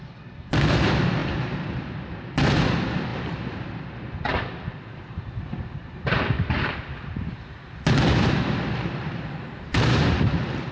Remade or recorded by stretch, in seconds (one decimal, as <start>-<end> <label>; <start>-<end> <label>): 0.0-1.2 remade; 1.2-2.7 recorded; 2.7-3.1 remade; 3.1-8.3 recorded; 8.3-10.7 remade